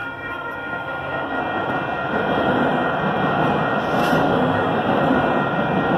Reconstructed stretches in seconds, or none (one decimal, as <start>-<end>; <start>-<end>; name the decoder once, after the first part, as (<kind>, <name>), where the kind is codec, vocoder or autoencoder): 0.0-1.4 (codec, SNAC); 4.0-5.0